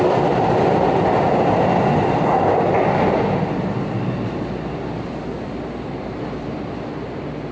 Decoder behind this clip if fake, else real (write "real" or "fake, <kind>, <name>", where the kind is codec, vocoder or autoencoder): real